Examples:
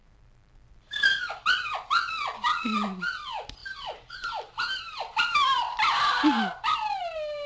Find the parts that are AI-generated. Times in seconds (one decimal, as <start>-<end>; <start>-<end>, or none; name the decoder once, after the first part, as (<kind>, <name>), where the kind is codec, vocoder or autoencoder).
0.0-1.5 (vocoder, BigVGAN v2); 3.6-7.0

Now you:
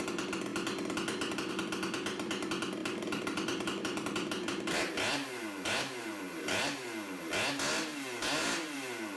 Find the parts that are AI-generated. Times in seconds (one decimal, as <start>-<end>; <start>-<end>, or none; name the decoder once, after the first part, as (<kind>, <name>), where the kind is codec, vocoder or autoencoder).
2.8-7.3 (vocoder, BigVGAN v2); 7.9-9.2

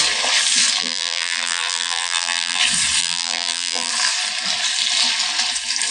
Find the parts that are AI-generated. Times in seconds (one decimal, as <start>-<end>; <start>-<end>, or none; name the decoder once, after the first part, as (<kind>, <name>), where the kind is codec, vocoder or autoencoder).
0.8-2.6 (vocoder, BigVGAN v2); 3.0-3.9

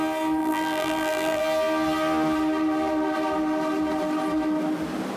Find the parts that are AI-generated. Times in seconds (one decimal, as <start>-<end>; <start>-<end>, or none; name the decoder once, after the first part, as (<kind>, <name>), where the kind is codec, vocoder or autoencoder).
0.4-1.4 (vocoder, BigVGAN v2)